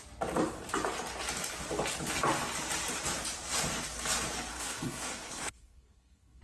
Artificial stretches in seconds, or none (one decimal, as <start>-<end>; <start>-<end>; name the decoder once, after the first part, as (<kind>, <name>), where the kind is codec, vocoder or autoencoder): 4.5-6.4 (codec, SNAC)